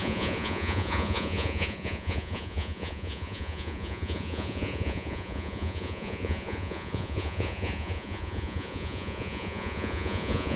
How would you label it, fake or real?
fake